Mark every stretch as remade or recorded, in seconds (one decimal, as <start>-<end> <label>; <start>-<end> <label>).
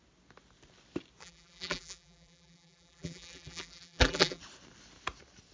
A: 0.0-1.2 recorded; 1.2-4.4 remade; 4.4-5.5 recorded